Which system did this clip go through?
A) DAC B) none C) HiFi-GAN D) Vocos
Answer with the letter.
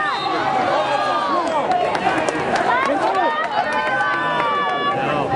B